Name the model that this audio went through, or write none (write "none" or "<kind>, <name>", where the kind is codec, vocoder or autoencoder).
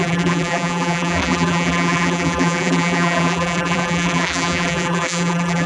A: vocoder, BigVGAN v2